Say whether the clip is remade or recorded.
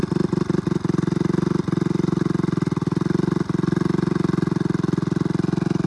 recorded